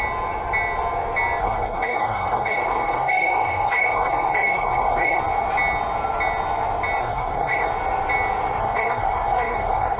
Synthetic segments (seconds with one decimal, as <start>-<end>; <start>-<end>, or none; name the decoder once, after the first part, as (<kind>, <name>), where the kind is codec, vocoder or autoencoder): 1.4-5.2 (codec, SNAC); 7.0-7.7; 8.6-10.0